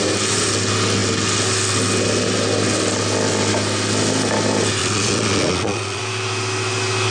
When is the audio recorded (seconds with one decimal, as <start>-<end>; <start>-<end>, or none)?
0.0-4.8; 6.0-7.1